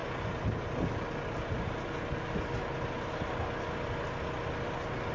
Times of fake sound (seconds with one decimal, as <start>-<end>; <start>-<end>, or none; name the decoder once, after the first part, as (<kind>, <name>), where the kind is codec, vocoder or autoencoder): none